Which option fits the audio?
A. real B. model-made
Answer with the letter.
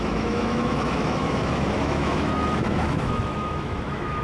B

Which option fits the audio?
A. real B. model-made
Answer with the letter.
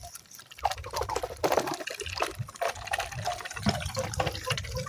A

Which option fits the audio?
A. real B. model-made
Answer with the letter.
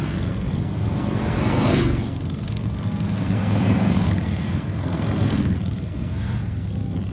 B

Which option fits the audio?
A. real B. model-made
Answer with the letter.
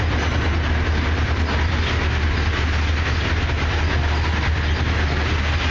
A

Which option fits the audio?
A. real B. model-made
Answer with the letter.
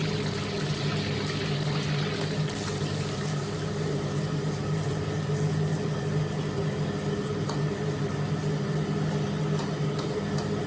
A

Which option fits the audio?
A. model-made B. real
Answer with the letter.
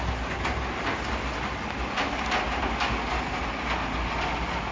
B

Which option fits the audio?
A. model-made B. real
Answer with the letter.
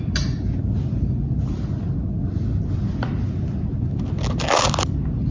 B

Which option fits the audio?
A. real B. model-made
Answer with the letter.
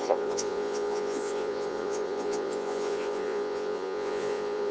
B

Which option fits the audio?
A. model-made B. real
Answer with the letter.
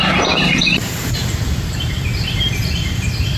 A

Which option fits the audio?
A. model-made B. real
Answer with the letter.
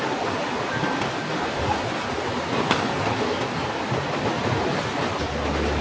B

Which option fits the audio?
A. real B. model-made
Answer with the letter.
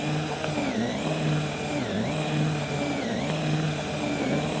A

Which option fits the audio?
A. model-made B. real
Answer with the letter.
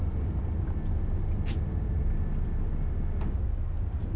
B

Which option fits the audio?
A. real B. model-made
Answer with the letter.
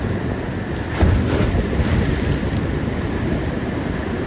A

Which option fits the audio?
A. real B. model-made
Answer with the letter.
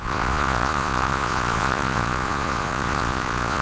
B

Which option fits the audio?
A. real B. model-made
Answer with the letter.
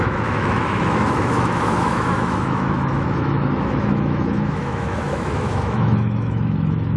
B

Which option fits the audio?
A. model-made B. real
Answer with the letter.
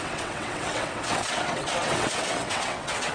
A